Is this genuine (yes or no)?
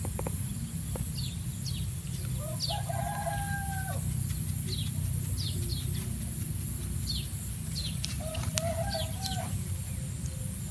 yes